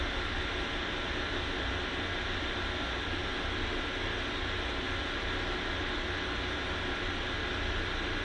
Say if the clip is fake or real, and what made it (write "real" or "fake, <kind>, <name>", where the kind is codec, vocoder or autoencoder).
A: real